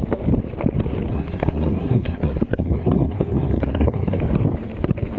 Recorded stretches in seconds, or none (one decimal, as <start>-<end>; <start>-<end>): 0.0-1.1; 4.2-5.2